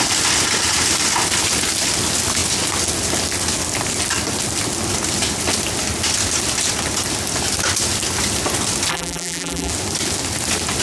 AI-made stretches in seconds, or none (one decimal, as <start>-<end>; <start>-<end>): 8.9-9.7